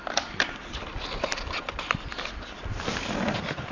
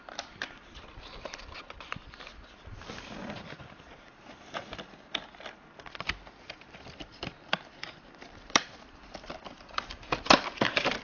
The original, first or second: first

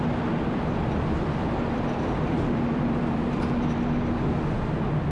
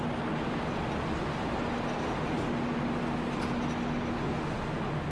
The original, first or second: second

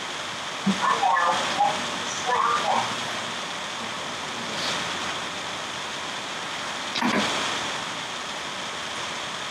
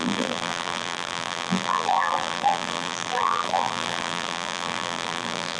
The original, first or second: first